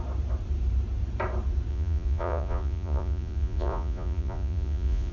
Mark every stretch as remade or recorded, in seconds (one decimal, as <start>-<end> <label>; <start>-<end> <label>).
0.0-1.7 recorded; 1.7-5.1 remade